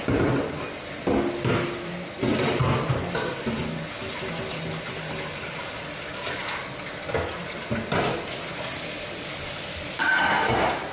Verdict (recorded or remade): recorded